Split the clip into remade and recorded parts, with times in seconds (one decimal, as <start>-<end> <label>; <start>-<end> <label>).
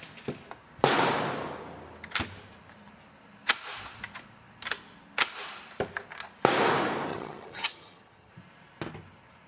0.0-7.1 recorded; 7.1-8.3 remade; 8.3-9.5 recorded